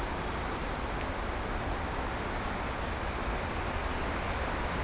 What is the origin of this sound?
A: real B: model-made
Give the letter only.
A